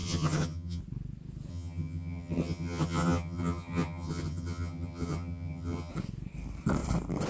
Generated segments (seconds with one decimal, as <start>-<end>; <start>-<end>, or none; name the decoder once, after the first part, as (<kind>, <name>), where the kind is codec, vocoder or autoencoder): 0.0-0.8 (vocoder, HiFi-GAN); 1.5-5.9